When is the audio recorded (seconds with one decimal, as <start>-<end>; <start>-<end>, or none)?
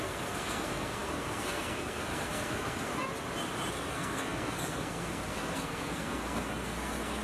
2.9-3.7